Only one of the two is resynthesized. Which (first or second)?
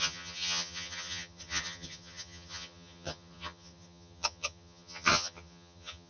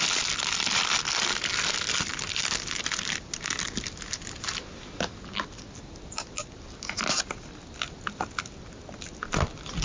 first